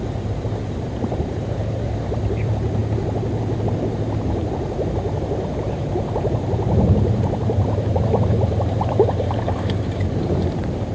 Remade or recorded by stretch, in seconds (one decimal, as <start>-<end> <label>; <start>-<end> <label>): 0.0-2.8 remade; 2.8-5.1 recorded; 5.1-10.9 remade